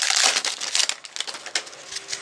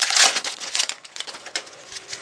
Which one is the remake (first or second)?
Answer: second